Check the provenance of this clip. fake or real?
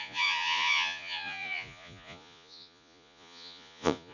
fake